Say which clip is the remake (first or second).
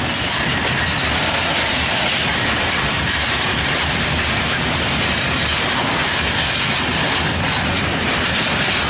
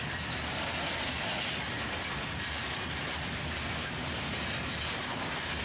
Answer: first